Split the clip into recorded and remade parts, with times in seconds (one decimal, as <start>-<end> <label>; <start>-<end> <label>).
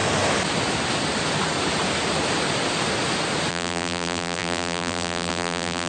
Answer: 0.0-3.5 recorded; 3.5-5.9 remade